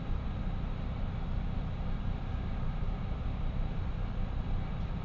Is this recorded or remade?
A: recorded